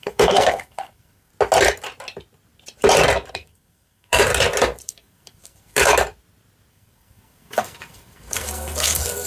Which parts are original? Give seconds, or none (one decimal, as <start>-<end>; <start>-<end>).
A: 1.3-3.3; 4.3-4.8; 5.9-6.7